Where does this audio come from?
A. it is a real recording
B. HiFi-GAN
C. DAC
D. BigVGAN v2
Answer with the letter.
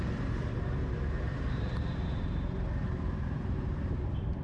D